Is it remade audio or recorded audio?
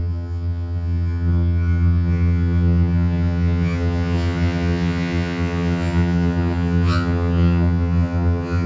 remade